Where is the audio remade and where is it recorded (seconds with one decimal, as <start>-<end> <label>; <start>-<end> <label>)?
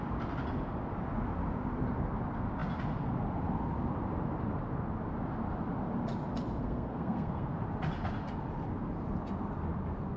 0.0-6.6 recorded; 6.6-7.5 remade; 7.5-10.2 recorded